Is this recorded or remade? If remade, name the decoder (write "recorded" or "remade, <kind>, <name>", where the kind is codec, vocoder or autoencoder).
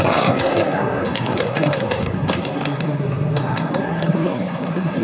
remade, codec, SNAC